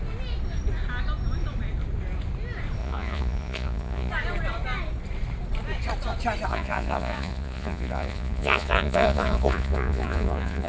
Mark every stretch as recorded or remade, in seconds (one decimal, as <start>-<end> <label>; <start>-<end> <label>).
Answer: 0.0-2.8 recorded; 2.8-4.1 remade; 4.1-6.5 recorded; 6.5-10.7 remade